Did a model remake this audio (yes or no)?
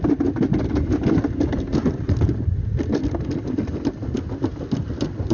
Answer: no